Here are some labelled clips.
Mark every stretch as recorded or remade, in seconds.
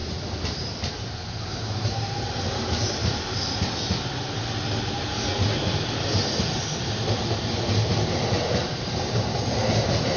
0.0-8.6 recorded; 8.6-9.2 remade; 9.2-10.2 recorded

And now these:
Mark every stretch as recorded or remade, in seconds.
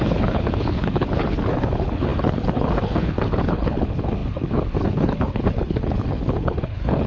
0.0-7.1 remade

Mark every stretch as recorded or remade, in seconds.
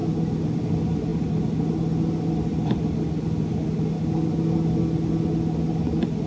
0.0-6.3 recorded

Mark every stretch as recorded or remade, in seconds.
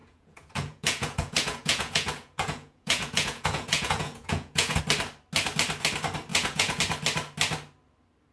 0.0-4.8 remade; 4.8-6.3 recorded; 6.3-6.8 remade; 6.8-8.3 recorded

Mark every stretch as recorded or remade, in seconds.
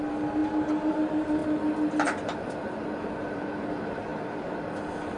0.0-1.4 remade; 1.4-3.3 recorded; 3.3-4.1 remade; 4.1-5.2 recorded